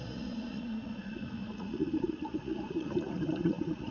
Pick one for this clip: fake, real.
fake